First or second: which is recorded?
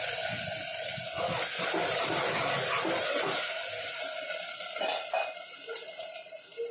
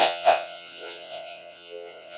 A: first